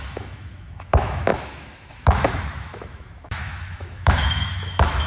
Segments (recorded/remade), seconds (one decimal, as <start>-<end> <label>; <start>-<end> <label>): 0.0-5.1 remade